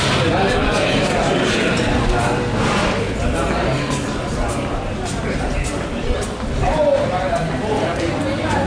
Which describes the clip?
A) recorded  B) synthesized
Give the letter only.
A